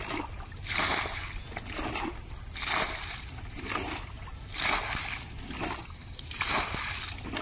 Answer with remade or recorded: recorded